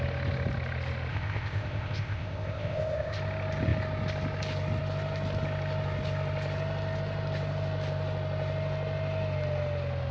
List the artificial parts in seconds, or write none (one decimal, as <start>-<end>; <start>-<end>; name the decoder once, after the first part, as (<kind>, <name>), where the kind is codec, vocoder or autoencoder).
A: 1.1-3.2 (codec, ZipCodec)

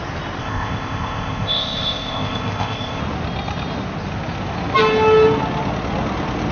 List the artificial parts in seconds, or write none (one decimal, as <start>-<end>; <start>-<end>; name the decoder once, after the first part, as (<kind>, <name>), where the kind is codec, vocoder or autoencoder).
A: 0.4-3.0 (codec, ZipCodec)

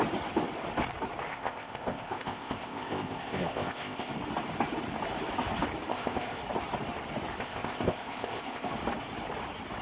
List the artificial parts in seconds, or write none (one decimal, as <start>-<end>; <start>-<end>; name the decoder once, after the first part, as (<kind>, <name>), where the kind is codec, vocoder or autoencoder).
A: 1.3-4.1 (codec, ZipCodec); 5.9-6.4; 7.4-8.7

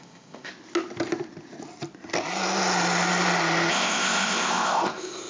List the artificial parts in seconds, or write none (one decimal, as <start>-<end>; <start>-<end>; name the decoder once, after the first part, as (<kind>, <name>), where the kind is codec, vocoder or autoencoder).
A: 0.0-0.5 (codec, ZipCodec); 3.7-5.3

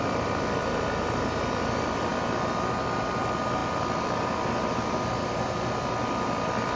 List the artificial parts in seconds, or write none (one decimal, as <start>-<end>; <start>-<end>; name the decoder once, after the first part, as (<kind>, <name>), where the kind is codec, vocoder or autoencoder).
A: none

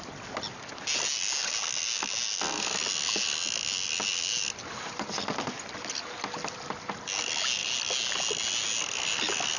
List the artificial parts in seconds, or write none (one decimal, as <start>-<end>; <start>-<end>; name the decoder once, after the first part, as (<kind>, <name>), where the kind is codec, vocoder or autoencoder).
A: none